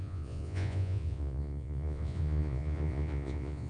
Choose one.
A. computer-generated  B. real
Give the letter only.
A